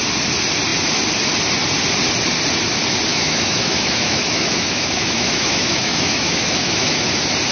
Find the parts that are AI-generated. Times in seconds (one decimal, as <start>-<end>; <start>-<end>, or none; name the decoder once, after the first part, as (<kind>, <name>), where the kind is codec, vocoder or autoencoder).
3.1-7.1 (autoencoder, DAC-VAE)